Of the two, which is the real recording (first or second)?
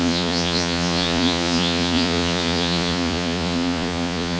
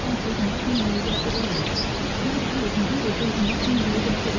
second